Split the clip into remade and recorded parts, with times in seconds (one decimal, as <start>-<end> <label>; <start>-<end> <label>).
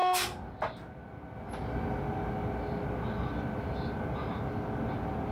0.0-5.3 recorded